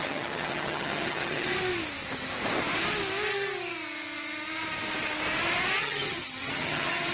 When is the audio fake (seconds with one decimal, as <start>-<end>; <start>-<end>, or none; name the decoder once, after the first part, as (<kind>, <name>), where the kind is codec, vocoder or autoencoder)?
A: 0.0-1.5 (vocoder, HiFi-GAN); 5.8-7.1